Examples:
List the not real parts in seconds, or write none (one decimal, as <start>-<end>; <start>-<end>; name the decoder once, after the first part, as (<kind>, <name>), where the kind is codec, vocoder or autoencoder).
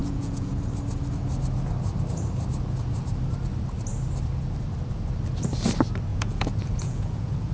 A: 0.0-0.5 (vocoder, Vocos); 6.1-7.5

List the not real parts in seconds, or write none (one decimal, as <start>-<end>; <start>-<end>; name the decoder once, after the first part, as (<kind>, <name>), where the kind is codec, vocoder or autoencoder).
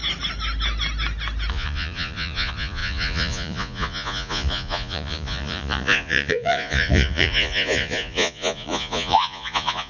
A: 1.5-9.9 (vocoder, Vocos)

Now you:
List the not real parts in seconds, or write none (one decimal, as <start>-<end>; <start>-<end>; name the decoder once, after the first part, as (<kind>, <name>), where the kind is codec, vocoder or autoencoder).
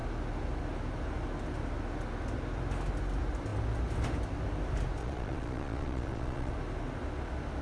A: 5.0-6.5 (vocoder, Vocos)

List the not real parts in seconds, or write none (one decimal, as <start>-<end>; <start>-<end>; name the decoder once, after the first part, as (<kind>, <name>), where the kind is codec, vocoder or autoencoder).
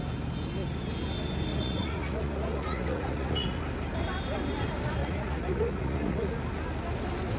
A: 1.5-3.6 (vocoder, Vocos); 5.0-6.3